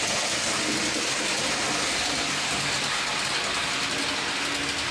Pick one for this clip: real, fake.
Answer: real